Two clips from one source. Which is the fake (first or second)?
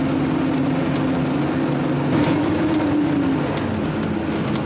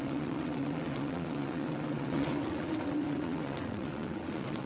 second